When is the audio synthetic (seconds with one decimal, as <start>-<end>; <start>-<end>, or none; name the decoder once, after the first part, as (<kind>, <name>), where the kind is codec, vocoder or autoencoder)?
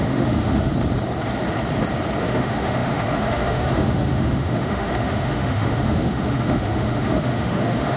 0.0-0.7 (autoencoder, DAC-VAE); 2.2-8.0